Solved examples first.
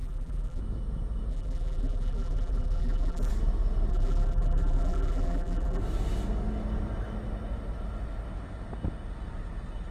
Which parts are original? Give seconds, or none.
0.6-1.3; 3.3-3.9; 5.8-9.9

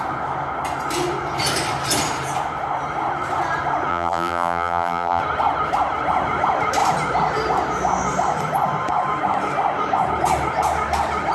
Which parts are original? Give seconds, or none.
0.0-3.9; 5.2-11.3